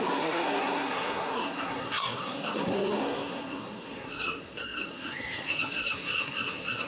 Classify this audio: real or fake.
fake